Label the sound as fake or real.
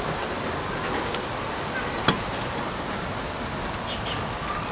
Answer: real